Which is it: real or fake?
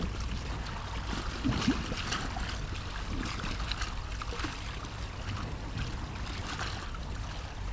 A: real